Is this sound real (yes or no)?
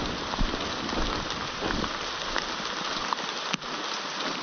yes